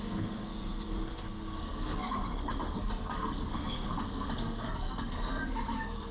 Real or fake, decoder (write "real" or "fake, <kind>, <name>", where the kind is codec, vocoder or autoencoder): fake, codec, SNAC